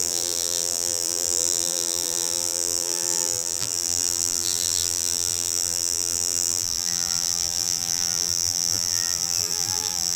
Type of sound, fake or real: fake